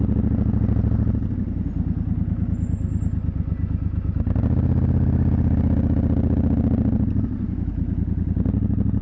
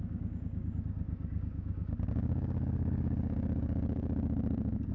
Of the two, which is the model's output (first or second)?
second